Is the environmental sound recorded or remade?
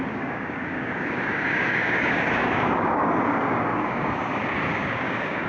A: remade